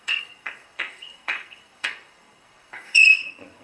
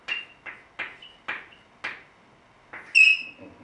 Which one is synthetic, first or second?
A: first